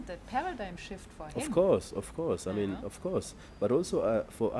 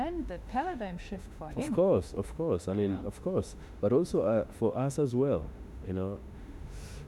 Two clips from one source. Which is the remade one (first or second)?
second